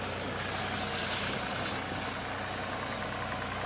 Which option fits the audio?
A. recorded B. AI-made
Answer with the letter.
A